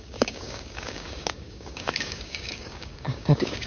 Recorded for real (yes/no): no